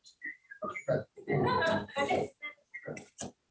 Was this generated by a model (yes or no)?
no